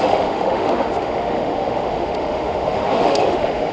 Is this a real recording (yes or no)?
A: no